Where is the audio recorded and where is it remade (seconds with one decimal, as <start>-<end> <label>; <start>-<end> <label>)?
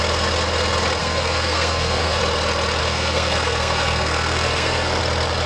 0.0-1.0 recorded; 1.0-2.2 remade; 2.2-2.8 recorded; 2.8-5.0 remade; 5.0-5.5 recorded